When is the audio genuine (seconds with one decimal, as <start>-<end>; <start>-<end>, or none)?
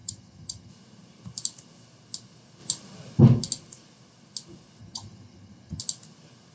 0.7-4.8; 5.8-6.5